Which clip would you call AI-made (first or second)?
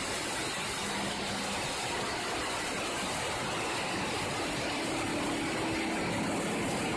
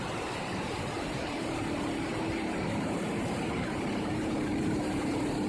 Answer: second